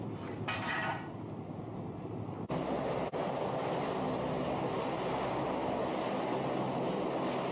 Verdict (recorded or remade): recorded